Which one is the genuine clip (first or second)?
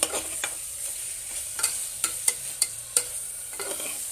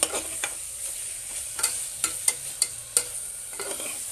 second